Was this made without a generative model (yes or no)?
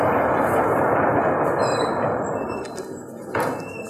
yes